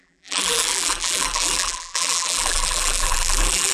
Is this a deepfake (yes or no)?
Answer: yes